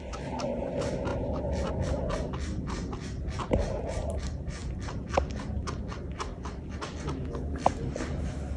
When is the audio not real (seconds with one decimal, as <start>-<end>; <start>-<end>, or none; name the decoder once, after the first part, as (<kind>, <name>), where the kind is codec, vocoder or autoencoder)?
none